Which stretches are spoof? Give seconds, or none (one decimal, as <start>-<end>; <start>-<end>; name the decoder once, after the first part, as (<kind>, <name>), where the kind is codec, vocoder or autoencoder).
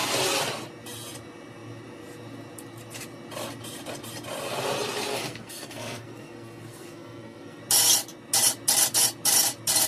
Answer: 5.1-7.6 (codec, SNAC)